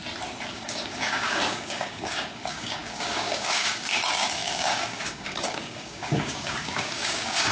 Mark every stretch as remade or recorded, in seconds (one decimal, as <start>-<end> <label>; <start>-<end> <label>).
0.0-0.5 recorded; 0.5-7.5 remade